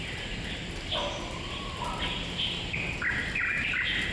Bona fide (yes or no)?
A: yes